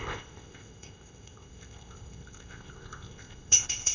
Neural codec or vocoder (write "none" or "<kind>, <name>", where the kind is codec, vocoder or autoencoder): codec, ZipCodec